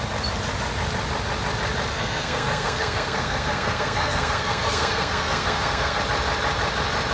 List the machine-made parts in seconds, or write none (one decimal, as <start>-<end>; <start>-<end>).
1.9-6.0